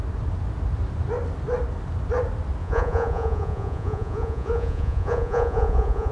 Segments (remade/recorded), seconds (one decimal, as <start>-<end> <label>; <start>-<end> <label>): 0.0-2.6 recorded; 2.6-6.1 remade